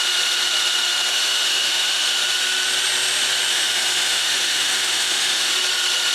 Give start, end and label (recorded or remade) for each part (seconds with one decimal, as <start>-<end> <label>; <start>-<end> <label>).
0.0-1.1 recorded; 1.1-2.1 remade; 2.1-3.5 recorded; 3.5-5.5 remade; 5.5-6.1 recorded